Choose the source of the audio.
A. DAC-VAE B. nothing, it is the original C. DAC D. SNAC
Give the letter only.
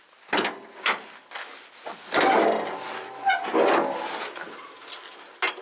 B